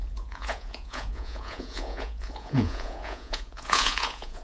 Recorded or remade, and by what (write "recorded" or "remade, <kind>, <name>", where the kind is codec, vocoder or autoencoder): remade, vocoder, Vocos